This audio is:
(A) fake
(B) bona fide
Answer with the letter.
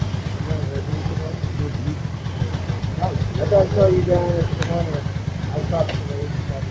B